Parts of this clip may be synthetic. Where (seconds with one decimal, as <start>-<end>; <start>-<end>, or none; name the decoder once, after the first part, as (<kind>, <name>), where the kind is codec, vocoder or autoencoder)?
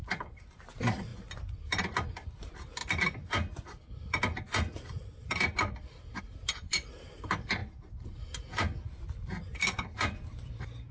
0.6-7.6 (vocoder, BigVGAN v2); 9.6-10.9